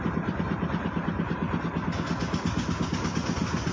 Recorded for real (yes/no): yes